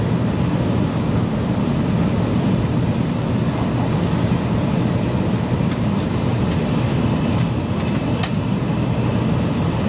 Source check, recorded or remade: recorded